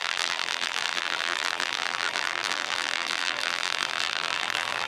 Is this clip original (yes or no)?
no